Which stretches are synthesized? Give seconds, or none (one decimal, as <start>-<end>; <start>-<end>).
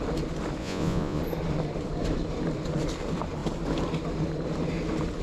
0.6-1.2